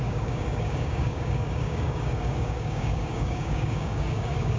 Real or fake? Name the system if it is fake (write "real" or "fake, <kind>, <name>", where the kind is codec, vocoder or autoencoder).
fake, codec, DAC